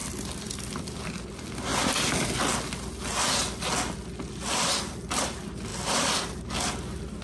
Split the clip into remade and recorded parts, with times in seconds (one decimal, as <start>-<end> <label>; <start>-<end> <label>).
0.0-0.8 remade; 0.8-5.7 recorded; 5.7-6.3 remade; 6.3-7.2 recorded